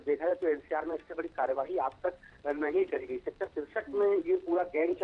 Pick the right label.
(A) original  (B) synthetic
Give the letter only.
B